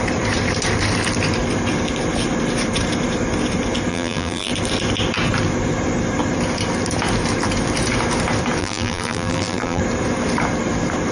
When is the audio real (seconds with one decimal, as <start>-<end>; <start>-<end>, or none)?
0.0-3.9; 4.5-8.6; 9.8-11.1